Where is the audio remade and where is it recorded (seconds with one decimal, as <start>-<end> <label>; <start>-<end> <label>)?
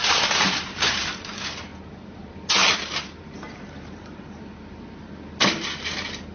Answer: 0.0-1.1 remade; 1.1-2.6 recorded; 2.6-4.9 remade; 4.9-6.3 recorded